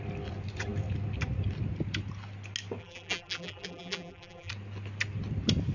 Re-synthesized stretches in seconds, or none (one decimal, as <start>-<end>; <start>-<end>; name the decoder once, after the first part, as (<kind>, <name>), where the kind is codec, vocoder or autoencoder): 2.8-4.5 (vocoder, BigVGAN v2)